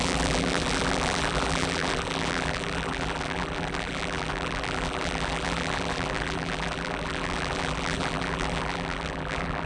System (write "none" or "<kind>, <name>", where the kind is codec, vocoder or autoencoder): vocoder, BigVGAN v2